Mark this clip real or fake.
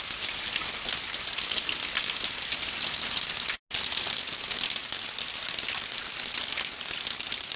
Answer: real